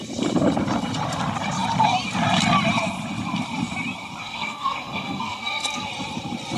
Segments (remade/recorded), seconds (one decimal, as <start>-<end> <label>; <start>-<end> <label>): 0.0-4.2 recorded; 4.2-5.9 remade; 5.9-6.6 recorded